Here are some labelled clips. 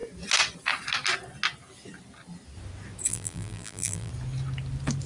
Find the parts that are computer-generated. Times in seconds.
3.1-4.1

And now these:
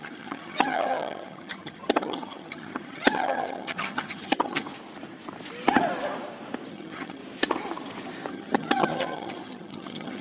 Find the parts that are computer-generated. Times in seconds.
0.0-4.7; 6.7-7.2; 8.3-10.2

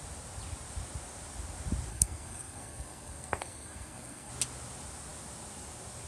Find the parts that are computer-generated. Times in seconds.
1.9-4.3

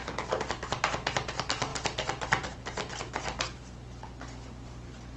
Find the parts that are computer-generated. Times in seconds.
none

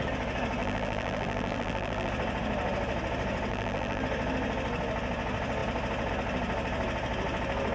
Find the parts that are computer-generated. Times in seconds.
0.6-2.1; 3.5-4.0

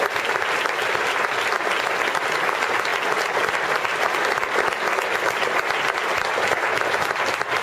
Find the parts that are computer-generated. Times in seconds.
none

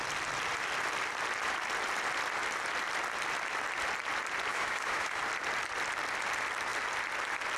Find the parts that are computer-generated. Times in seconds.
4.5-5.2